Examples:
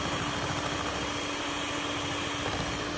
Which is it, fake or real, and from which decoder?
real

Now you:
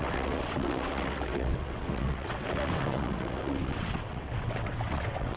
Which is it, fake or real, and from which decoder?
fake, vocoder, WaveNeXt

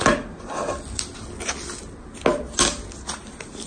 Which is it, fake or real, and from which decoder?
real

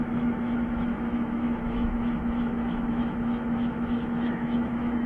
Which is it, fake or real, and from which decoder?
fake, autoencoder, DAC-VAE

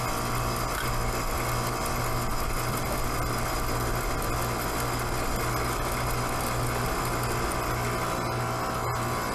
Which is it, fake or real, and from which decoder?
real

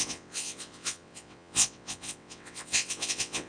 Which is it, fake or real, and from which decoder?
fake, vocoder, WaveNeXt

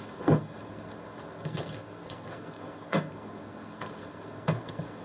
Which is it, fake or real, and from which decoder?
fake, codec, SNAC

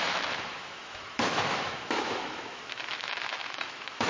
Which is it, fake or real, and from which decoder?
fake, autoencoder, DAC-VAE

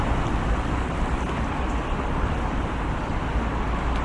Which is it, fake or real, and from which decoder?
real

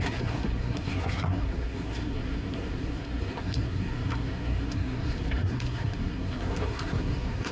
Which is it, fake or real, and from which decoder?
fake, codec, SNAC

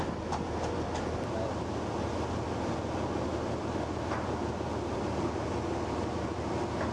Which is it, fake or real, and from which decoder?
real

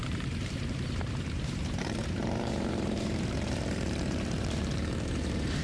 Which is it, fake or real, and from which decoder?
fake, vocoder, BigVGAN v2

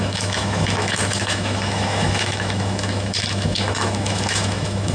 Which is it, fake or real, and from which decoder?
fake, autoencoder, DAC-VAE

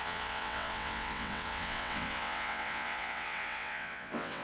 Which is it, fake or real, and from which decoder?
fake, vocoder, WaveNeXt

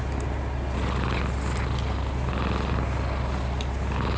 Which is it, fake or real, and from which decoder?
real